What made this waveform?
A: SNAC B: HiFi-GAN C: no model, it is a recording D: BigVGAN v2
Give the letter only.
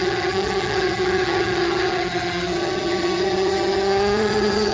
B